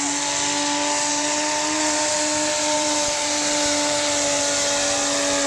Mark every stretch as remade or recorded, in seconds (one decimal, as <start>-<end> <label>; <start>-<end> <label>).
0.0-1.1 recorded; 1.1-4.4 remade; 4.4-5.5 recorded